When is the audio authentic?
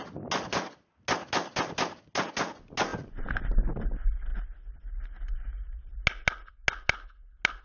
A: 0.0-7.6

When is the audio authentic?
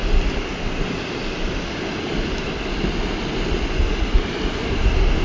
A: 0.0-5.2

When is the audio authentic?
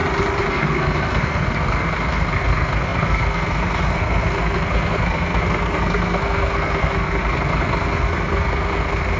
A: 0.0-0.5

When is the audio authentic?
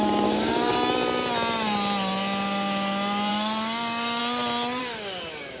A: 0.7-3.3; 4.2-4.8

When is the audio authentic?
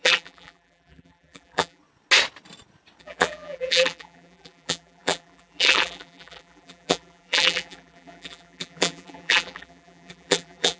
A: 1.8-3.0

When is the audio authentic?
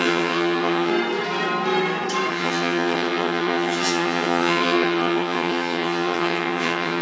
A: 0.9-2.3